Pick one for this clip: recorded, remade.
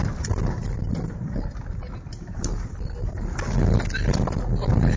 recorded